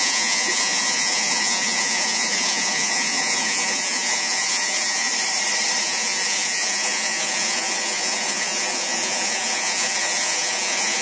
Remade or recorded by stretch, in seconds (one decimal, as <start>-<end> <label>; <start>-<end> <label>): 0.0-5.1 remade; 5.1-5.8 recorded; 5.8-11.0 remade